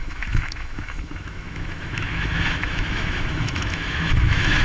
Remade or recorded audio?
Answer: remade